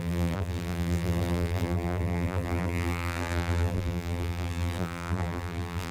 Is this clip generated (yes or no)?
yes